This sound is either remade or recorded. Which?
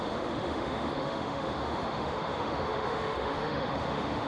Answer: remade